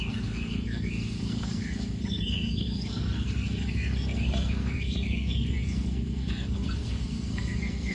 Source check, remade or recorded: remade